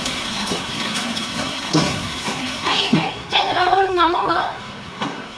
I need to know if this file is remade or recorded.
remade